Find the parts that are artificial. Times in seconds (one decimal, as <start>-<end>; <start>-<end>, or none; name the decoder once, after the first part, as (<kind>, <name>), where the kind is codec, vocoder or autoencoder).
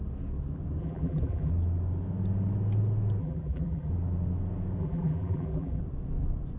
0.8-1.5 (vocoder, BigVGAN v2); 3.2-3.9; 4.8-5.8